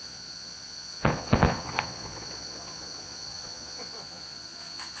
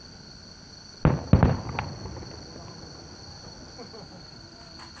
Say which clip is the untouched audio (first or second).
second